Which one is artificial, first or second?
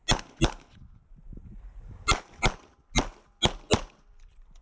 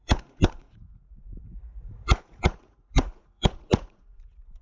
second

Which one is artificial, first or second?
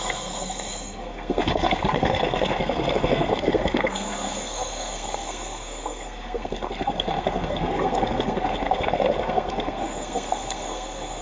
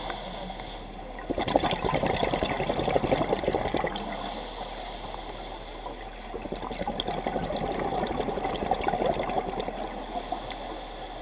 first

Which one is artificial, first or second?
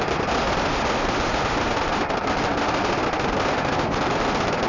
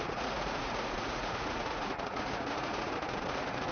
second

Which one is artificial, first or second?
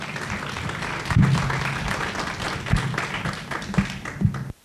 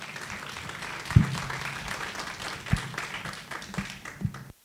second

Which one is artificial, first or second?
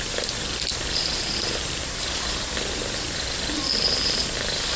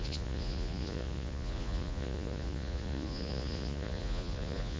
second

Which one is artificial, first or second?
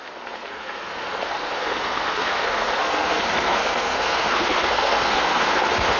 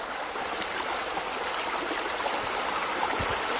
first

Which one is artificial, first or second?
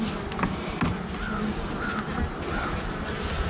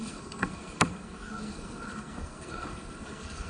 second